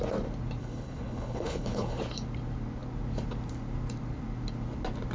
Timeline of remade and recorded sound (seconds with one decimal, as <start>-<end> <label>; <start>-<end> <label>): 0.0-0.6 recorded; 0.6-2.0 remade; 2.0-5.1 recorded